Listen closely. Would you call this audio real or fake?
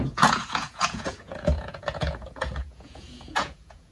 fake